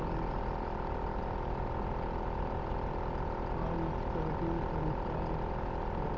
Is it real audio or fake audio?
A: real